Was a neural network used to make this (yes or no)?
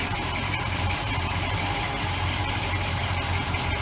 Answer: yes